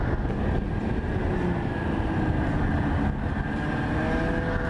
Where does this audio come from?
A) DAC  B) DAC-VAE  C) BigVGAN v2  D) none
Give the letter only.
D